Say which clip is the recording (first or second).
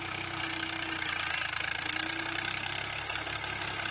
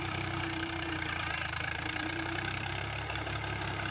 first